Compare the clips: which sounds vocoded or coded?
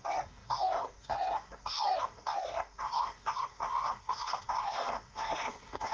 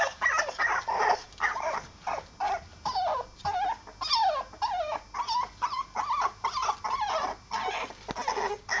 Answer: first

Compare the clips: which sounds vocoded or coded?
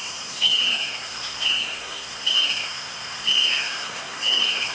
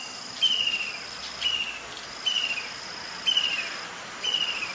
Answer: first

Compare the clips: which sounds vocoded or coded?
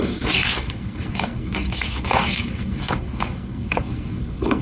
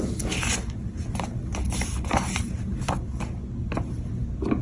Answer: first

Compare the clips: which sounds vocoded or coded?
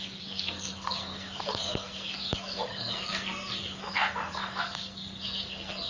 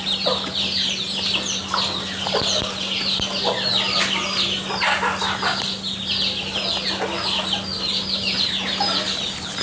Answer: first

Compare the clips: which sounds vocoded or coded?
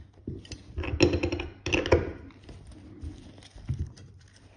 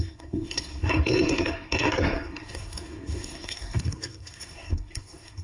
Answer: second